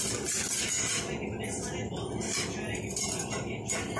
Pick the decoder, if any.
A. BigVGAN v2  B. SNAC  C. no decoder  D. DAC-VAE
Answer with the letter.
C